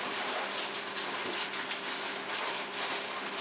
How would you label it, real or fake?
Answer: real